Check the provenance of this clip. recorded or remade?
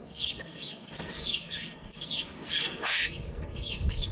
remade